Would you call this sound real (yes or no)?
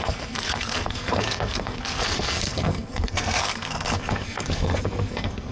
no